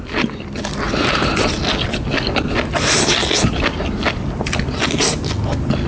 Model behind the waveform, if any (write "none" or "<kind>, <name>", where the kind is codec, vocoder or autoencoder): none